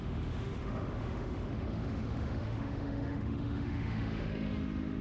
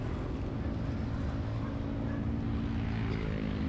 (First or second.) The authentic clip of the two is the second